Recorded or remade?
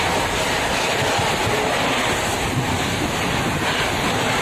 recorded